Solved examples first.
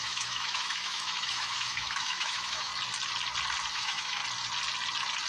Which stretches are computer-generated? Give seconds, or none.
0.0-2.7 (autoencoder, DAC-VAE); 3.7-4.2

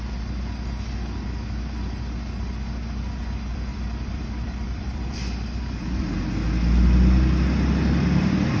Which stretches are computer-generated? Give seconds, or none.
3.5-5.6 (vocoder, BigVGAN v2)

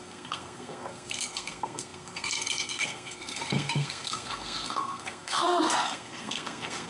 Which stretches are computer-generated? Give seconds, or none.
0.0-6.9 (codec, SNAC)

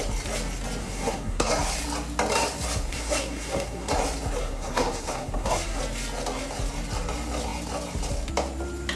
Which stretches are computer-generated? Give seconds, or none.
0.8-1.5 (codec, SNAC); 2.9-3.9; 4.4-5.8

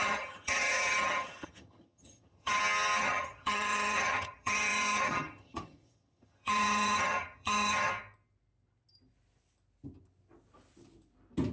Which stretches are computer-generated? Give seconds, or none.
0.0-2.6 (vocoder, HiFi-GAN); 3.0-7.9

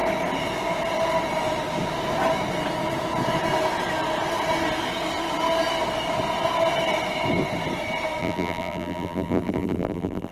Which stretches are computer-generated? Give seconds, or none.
8.2-10.3 (vocoder, BigVGAN v2)